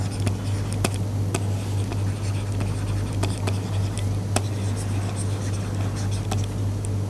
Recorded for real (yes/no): yes